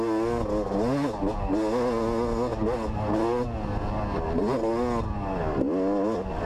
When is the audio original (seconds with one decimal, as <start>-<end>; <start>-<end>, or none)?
0.0-6.4